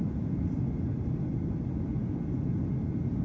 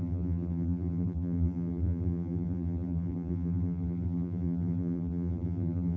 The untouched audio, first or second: first